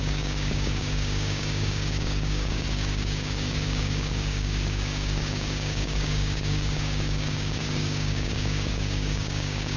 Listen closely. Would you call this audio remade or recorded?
remade